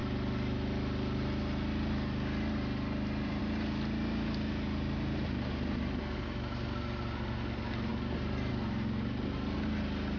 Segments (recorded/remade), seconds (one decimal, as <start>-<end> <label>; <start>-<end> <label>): 0.0-3.4 remade; 3.4-10.2 recorded